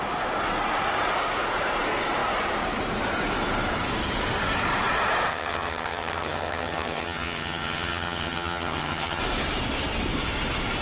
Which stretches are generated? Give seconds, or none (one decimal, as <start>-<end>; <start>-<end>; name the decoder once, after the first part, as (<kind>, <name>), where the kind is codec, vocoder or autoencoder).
5.3-9.2 (vocoder, HiFi-GAN)